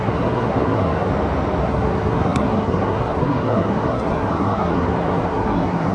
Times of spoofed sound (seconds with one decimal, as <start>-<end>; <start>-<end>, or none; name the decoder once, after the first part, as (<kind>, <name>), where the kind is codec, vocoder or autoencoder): 0.0-1.1 (codec, SNAC); 1.6-5.9